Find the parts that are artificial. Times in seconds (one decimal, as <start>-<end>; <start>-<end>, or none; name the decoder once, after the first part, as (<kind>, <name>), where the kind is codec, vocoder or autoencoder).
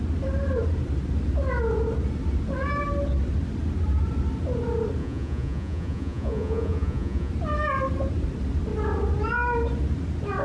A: 5.0-7.3 (vocoder, Vocos)